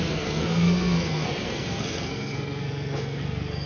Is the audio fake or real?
fake